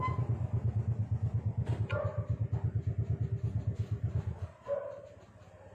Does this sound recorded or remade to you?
recorded